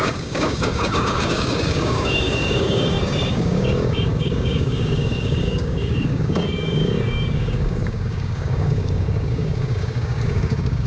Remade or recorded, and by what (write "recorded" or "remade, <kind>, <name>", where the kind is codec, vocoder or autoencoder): remade, codec, DAC